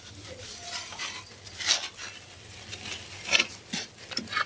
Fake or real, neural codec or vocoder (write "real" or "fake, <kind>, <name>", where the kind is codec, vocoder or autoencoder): real